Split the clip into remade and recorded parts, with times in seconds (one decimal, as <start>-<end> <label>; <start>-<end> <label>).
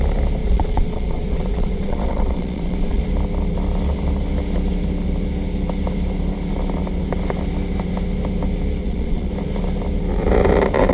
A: 0.0-0.4 recorded; 0.4-3.0 remade; 3.0-8.8 recorded; 8.8-9.3 remade; 9.3-10.9 recorded